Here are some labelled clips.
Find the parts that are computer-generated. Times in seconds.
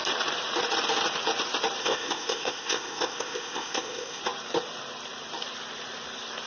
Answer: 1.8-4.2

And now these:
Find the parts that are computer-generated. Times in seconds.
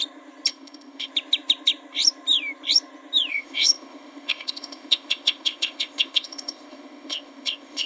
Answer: 0.5-1.1; 3.3-7.9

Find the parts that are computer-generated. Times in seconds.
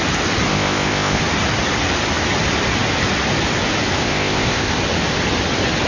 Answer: 0.5-1.2; 4.0-4.7